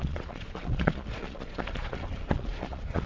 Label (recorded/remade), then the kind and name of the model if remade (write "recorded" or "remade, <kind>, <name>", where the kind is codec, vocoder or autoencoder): remade, vocoder, Vocos